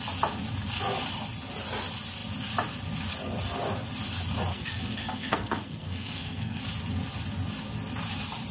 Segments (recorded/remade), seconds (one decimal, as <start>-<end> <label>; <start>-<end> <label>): 0.0-4.5 recorded; 4.5-6.6 remade; 6.6-8.5 recorded